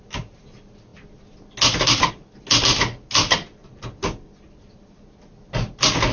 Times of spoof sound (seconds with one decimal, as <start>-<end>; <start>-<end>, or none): none